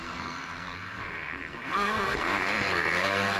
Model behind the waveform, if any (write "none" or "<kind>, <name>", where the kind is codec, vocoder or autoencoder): codec, SNAC